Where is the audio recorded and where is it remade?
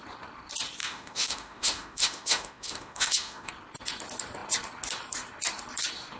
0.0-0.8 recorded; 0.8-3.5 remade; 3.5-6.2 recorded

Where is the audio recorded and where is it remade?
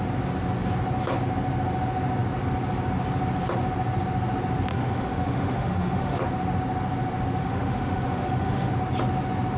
0.0-4.7 recorded; 4.7-6.2 remade; 6.2-7.4 recorded; 7.4-8.7 remade; 8.7-9.6 recorded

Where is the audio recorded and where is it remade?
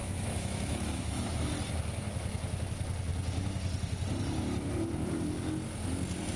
0.0-1.5 remade; 1.5-6.4 recorded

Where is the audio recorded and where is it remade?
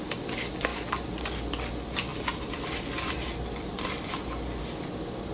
0.0-5.3 recorded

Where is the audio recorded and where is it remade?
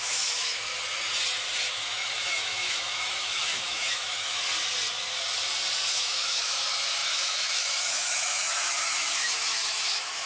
0.0-0.7 remade; 0.7-1.7 recorded; 1.7-4.5 remade; 4.5-5.9 recorded; 5.9-10.3 remade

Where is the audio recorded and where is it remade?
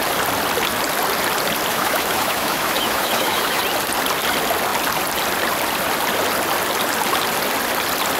0.0-1.7 recorded; 1.7-3.6 remade; 3.6-8.2 recorded